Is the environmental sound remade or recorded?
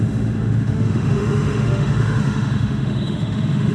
remade